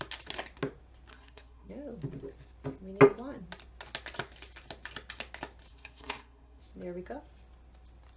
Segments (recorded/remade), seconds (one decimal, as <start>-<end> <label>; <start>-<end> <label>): 0.0-1.1 recorded; 1.1-1.7 remade; 1.7-5.7 recorded; 5.7-6.6 remade; 6.6-8.2 recorded